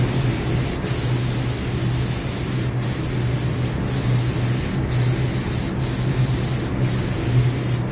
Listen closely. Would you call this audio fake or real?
real